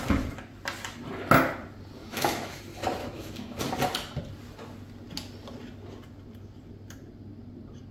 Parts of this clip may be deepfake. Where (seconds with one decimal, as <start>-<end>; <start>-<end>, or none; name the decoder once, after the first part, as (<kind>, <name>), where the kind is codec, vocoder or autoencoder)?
2.0-2.6 (autoencoder, DAC-VAE); 3.0-3.6